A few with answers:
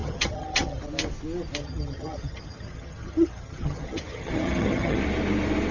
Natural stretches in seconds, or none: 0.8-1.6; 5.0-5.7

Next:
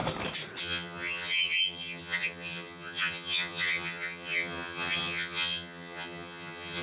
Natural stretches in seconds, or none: 0.0-0.6

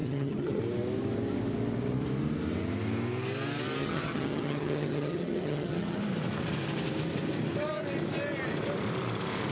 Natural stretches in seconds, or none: 0.6-3.8; 6.0-9.5

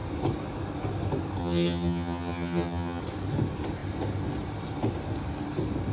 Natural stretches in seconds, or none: 0.0-1.4; 3.0-5.9